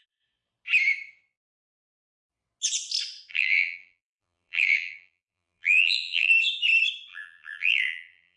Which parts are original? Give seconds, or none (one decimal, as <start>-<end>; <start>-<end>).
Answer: 0.0-3.3; 6.3-7.1